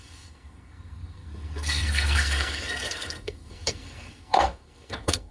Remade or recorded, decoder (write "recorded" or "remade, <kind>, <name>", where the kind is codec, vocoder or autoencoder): remade, codec, SNAC